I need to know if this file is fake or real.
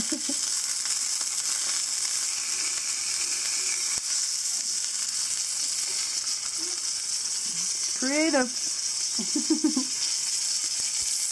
real